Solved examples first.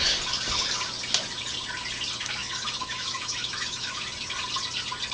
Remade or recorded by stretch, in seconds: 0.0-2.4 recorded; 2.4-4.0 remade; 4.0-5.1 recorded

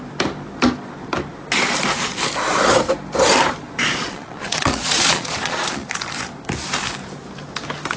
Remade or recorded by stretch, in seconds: 0.0-4.0 recorded; 4.0-5.9 remade; 5.9-8.0 recorded

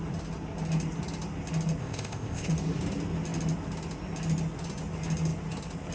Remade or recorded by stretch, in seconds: 0.0-1.8 recorded; 1.8-2.5 remade; 2.5-5.9 recorded

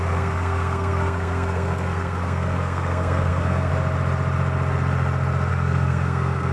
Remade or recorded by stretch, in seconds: 0.0-3.7 remade; 3.7-5.5 recorded; 5.5-6.5 remade